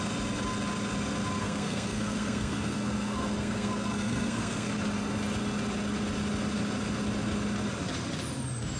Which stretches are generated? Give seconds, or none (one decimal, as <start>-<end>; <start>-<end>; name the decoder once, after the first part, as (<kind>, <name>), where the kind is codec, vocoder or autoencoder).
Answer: 1.4-4.7 (codec, SNAC)